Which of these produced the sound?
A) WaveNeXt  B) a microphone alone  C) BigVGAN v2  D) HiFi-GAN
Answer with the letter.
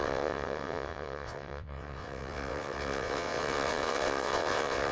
A